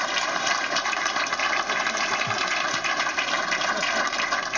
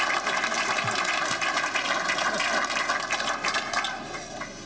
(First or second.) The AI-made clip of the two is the first